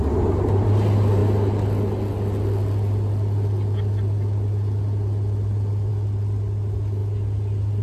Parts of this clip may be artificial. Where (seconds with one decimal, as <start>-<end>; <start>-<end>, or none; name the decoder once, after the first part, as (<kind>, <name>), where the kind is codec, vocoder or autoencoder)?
none

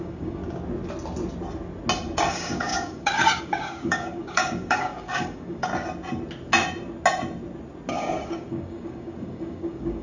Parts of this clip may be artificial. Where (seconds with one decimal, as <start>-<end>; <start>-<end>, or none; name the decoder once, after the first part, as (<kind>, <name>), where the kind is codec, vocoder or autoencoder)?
0.0-0.4 (codec, DAC); 2.3-5.7; 7.9-10.0

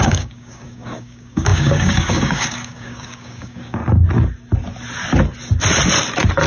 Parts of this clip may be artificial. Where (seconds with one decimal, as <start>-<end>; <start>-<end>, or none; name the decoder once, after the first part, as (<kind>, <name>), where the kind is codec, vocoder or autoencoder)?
0.0-3.8 (codec, DAC)

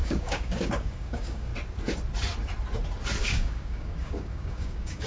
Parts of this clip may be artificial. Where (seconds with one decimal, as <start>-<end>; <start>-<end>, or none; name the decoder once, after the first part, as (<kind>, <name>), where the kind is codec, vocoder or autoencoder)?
0.0-1.5 (codec, DAC); 3.2-5.1

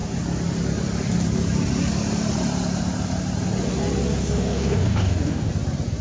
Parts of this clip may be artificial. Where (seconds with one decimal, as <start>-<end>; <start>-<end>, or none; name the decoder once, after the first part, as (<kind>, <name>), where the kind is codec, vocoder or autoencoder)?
4.2-5.5 (codec, DAC)

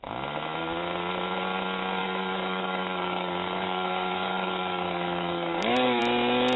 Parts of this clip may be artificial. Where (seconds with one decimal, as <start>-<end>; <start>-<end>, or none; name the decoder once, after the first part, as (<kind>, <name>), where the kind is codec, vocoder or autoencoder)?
2.0-6.0 (codec, DAC)

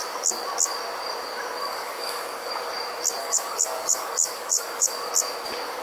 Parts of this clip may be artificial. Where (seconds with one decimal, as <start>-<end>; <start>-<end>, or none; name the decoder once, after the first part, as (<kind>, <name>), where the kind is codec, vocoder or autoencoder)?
1.6-2.5 (codec, DAC); 3.2-5.1

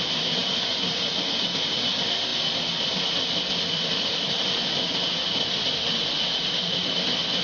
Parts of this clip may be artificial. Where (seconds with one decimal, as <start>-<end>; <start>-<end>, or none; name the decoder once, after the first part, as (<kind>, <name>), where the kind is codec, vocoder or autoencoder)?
none